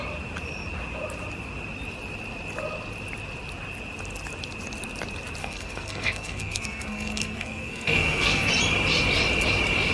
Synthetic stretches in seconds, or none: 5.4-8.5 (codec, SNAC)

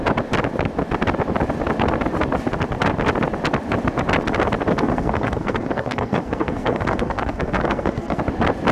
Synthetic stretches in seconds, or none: 4.7-8.2 (codec, SNAC)

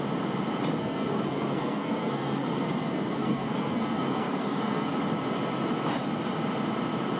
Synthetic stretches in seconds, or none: 0.8-5.0 (codec, SNAC)

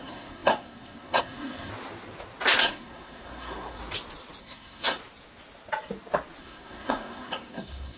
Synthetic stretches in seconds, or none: 0.0-1.7 (codec, SNAC); 2.6-3.8; 4.4-5.0; 6.4-8.0